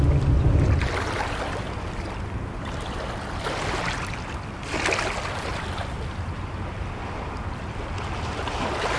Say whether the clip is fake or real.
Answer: real